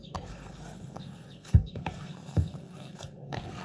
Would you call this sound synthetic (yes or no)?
yes